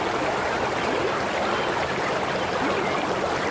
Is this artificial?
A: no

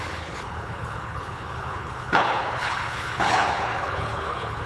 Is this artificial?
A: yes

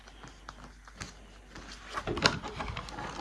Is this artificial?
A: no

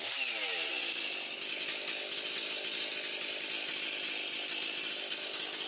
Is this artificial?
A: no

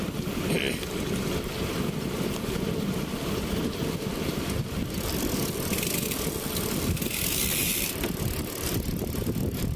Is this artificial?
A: yes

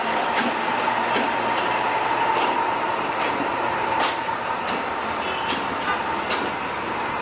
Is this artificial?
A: no